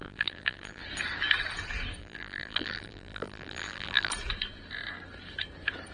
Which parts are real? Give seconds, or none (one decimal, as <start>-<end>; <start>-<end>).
0.8-2.0; 4.1-5.9